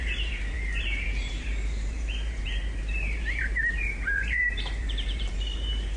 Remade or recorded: remade